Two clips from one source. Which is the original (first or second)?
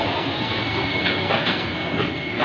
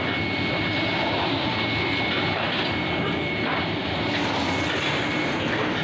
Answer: second